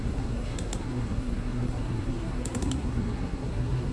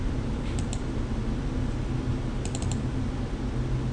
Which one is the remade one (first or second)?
first